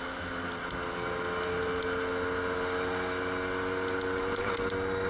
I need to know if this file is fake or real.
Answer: real